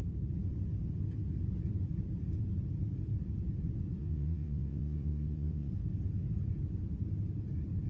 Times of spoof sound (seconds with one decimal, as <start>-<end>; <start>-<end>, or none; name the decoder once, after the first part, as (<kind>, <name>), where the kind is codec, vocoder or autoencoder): 4.0-5.7 (vocoder, WaveNeXt)